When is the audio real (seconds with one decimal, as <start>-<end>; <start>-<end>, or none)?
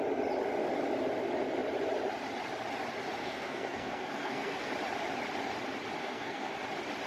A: 0.0-3.2; 4.7-6.0; 6.5-7.1